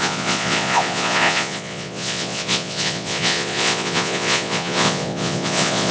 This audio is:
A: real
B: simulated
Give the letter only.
B